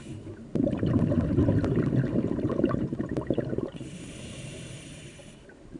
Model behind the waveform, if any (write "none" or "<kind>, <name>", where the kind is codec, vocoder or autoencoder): vocoder, BigVGAN v2